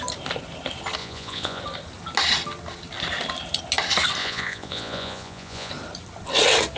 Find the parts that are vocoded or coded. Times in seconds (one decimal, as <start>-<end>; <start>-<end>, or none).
1.0-1.6; 4.2-5.7